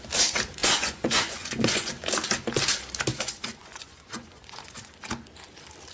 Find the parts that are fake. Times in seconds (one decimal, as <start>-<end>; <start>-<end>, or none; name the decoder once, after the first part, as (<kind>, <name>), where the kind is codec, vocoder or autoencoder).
0.6-1.9 (vocoder, Vocos); 3.1-4.9